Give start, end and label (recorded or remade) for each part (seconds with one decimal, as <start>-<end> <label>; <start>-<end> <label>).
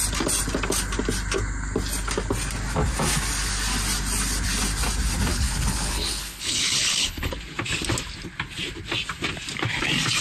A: 0.0-5.3 recorded; 5.3-7.3 remade; 7.3-10.2 recorded